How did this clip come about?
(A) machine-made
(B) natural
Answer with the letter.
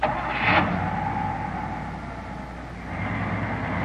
B